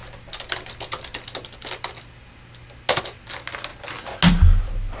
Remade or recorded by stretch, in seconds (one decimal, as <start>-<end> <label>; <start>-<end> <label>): 0.0-5.0 recorded